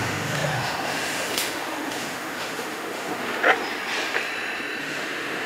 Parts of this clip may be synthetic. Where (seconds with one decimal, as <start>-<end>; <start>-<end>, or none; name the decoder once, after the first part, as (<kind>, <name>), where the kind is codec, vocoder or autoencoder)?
0.0-3.4 (autoencoder, DAC-VAE); 4.8-5.5

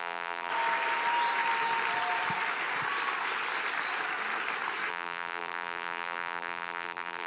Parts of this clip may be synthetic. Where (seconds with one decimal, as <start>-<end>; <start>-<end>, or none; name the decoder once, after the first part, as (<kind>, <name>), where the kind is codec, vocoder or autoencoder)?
0.0-0.5 (vocoder, BigVGAN v2); 4.9-7.3

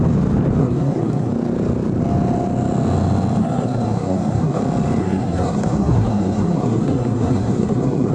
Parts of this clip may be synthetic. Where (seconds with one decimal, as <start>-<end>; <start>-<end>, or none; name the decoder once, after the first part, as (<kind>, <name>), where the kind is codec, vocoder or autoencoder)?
0.6-1.3 (codec, SNAC); 3.4-4.6; 5.0-8.1

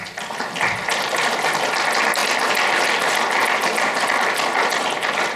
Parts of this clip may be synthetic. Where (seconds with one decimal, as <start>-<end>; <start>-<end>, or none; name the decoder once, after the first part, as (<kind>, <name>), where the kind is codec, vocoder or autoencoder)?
none

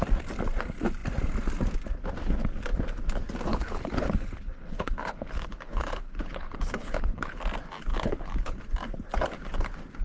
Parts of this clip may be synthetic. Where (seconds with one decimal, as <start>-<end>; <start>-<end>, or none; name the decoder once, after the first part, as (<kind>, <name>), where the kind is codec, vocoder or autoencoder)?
3.5-7.4 (codec, HILCodec); 7.9-8.6

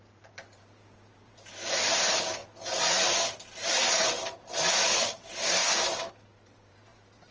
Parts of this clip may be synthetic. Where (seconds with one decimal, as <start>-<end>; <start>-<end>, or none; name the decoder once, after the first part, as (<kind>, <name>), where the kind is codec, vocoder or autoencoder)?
0.0-2.4 (vocoder, BigVGAN v2); 5.1-5.6; 6.1-7.3

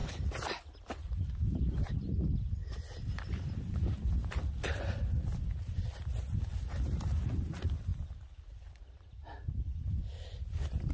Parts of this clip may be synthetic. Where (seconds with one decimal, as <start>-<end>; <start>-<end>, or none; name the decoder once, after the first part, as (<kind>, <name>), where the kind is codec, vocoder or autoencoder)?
none

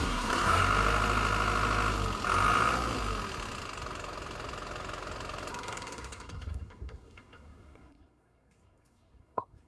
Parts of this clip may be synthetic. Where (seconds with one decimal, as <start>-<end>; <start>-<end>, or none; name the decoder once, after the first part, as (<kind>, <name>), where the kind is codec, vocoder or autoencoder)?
0.0-0.6 (codec, SNAC); 5.5-9.7